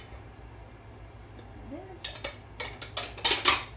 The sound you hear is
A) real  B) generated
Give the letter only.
A